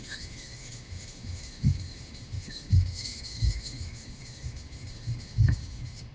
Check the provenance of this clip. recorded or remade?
remade